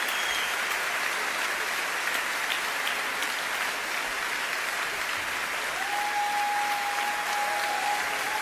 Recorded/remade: recorded